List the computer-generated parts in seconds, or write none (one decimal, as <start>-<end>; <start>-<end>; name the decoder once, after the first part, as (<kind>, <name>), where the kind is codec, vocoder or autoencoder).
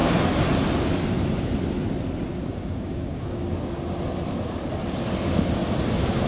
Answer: 2.3-3.7 (codec, DAC)